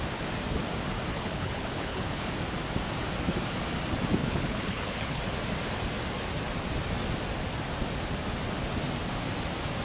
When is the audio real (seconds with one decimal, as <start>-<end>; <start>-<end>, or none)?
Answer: 0.0-1.1; 2.3-4.2; 5.2-9.8